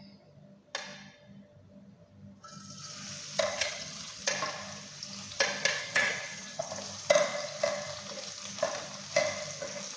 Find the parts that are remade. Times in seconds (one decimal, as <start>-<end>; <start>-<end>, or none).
3.5-4.2; 5.8-6.7